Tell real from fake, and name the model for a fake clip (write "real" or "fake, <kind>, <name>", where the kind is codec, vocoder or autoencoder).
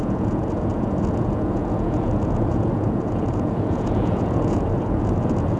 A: fake, vocoder, Vocos